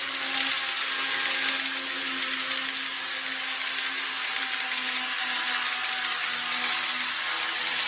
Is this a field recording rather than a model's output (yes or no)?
yes